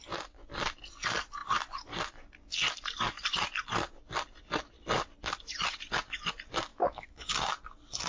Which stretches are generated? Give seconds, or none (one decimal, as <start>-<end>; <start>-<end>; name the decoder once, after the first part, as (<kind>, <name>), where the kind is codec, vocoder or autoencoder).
6.7-7.3 (autoencoder, DAC-VAE)